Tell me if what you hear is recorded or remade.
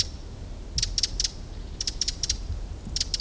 recorded